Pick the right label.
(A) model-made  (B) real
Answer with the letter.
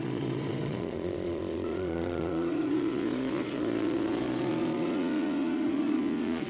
A